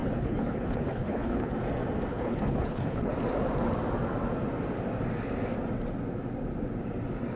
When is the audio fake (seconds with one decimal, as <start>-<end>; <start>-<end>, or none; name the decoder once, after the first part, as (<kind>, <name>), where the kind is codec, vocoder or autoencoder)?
0.0-1.5 (codec, HILCodec); 2.1-3.1